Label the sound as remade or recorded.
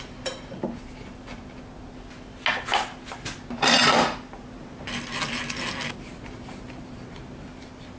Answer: recorded